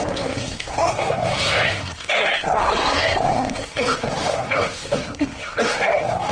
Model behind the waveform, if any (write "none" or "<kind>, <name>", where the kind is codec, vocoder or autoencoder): codec, SNAC